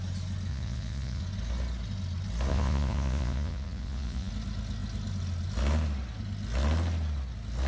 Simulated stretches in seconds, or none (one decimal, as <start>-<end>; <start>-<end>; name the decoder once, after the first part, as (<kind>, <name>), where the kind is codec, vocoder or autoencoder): 0.5-1.2 (vocoder, Vocos); 2.5-4.3